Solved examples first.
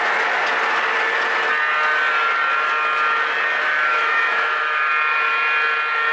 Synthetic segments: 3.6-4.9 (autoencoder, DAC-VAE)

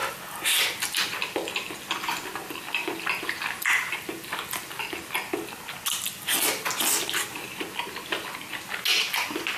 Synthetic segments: none

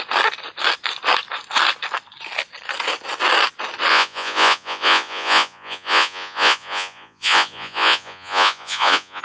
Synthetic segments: 3.9-9.2 (vocoder, Vocos)

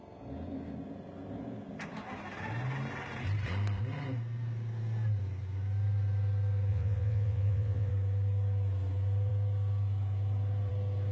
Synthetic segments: 6.7-7.9 (vocoder, WaveNeXt)